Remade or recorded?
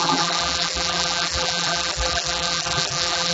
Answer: remade